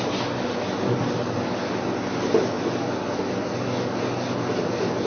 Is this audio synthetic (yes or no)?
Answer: no